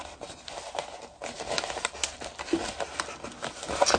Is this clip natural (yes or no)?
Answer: yes